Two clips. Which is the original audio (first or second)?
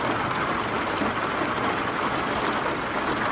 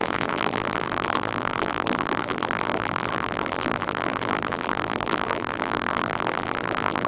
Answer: first